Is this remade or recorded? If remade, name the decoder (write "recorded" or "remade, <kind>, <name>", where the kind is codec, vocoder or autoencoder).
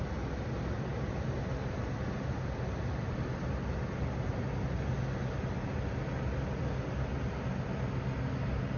recorded